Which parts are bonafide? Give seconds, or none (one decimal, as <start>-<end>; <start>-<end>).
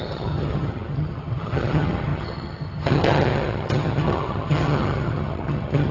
none